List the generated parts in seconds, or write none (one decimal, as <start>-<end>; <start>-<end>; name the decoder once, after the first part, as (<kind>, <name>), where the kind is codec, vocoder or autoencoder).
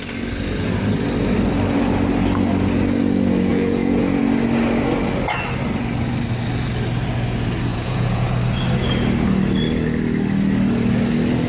3.5-4.0 (vocoder, Vocos); 7.7-8.3